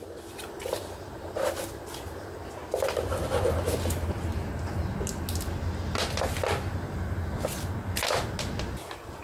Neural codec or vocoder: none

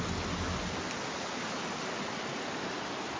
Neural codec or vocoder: none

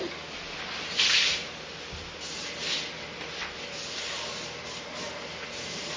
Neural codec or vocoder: none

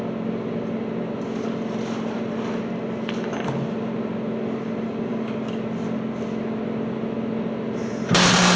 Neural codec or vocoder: none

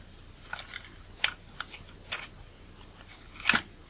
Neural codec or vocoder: none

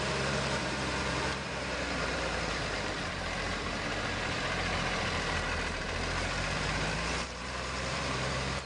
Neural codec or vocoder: vocoder, BigVGAN v2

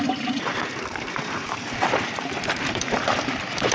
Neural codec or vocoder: vocoder, BigVGAN v2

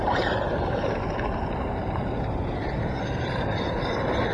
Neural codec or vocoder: vocoder, BigVGAN v2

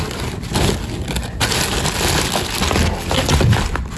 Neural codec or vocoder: none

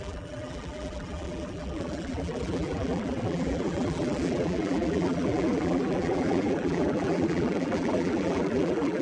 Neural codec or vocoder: vocoder, BigVGAN v2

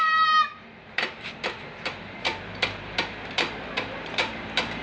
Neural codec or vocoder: vocoder, BigVGAN v2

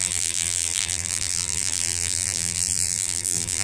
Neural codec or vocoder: vocoder, BigVGAN v2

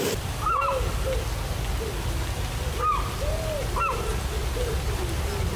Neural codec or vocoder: none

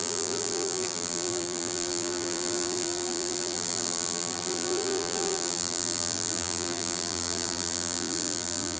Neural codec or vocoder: vocoder, BigVGAN v2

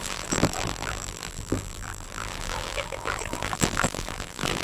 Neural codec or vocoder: vocoder, BigVGAN v2